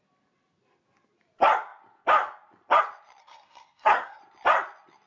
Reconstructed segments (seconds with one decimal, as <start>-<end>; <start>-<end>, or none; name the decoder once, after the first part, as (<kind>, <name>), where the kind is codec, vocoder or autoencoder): 3.2-4.2 (codec, SNAC)